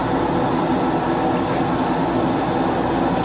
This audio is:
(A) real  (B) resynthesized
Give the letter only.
A